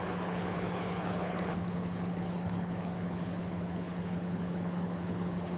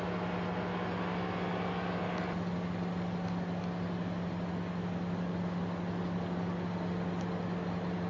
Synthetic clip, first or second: first